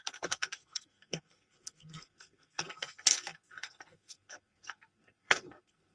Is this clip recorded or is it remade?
remade